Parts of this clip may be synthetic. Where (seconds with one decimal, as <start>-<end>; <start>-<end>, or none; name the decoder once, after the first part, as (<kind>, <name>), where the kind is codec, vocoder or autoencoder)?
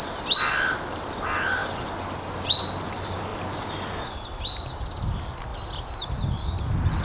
none